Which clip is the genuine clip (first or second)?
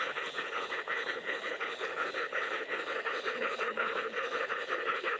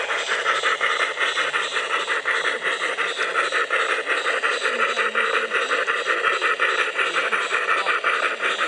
second